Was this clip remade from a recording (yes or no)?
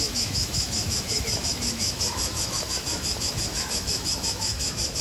yes